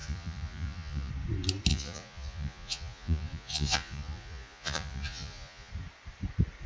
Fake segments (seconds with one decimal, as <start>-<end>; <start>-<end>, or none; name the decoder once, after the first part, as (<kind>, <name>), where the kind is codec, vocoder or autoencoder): 0.0-1.1 (vocoder, Vocos); 1.7-5.7